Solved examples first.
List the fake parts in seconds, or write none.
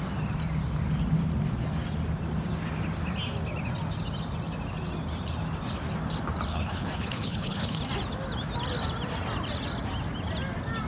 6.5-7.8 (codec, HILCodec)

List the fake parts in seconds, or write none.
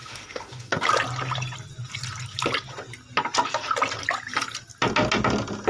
0.0-0.7 (autoencoder, DAC-VAE)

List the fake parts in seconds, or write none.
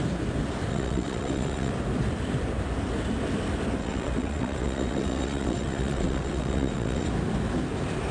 0.7-1.7 (vocoder, WaveNeXt); 3.8-7.1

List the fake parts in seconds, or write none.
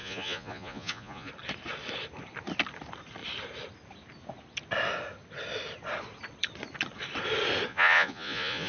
0.0-1.3 (vocoder, Vocos); 7.7-8.7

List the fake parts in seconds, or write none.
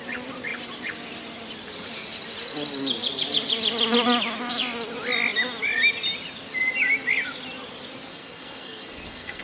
8.1-9.4 (codec, SNAC)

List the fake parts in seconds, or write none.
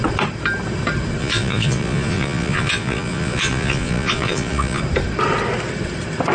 1.2-4.8 (vocoder, Vocos)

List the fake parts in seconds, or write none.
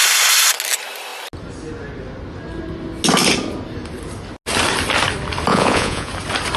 5.5-6.1 (vocoder, Vocos)